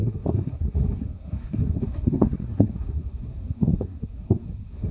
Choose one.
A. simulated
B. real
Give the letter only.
A